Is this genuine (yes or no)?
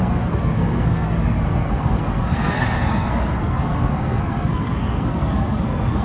no